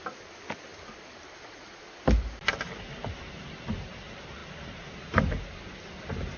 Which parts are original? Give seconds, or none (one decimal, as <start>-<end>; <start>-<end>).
0.0-6.4